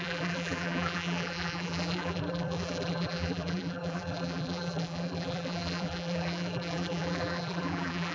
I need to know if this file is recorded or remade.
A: remade